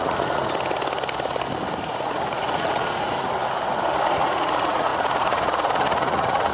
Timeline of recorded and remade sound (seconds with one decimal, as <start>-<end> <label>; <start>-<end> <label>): 0.0-0.4 remade; 0.4-1.8 recorded; 1.8-3.4 remade; 3.4-4.1 recorded; 4.1-6.5 remade